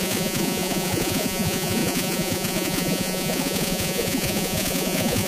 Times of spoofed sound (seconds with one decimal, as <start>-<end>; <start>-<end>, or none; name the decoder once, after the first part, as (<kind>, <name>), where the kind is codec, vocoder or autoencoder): 0.0-5.3 (vocoder, Vocos)

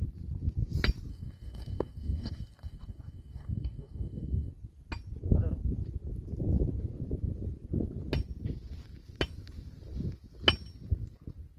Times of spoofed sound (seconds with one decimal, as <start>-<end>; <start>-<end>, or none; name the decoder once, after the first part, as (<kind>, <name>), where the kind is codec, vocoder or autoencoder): 1.1-4.5 (codec, DAC)

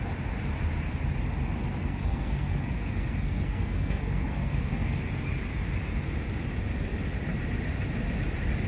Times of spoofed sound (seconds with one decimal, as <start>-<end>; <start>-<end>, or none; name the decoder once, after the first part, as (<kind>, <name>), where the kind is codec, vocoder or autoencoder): 1.8-5.1 (codec, SNAC)

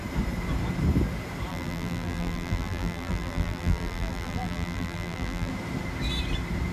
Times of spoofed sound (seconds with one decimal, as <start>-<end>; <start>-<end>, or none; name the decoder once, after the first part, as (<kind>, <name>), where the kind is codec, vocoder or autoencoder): 1.5-5.5 (vocoder, BigVGAN v2)